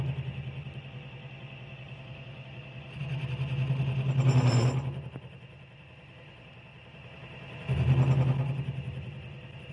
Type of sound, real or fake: real